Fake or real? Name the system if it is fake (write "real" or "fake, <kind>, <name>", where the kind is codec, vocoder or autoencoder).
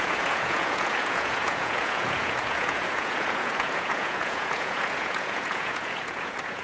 fake, vocoder, Vocos